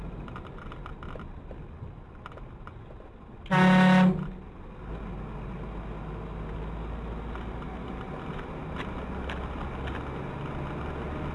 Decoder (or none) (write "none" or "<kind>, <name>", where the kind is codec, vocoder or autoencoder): none